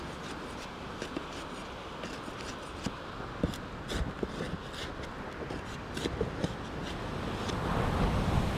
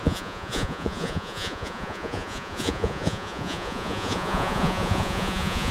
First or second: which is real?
first